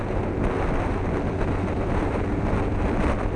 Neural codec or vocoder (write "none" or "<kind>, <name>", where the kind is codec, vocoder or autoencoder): none